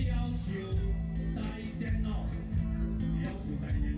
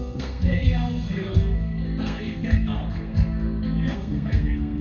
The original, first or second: first